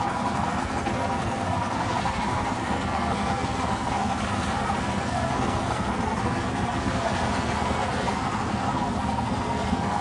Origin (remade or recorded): remade